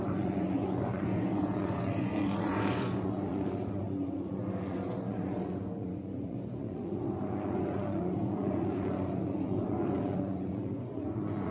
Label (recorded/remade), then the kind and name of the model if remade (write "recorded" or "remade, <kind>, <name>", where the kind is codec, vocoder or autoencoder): remade, vocoder, Vocos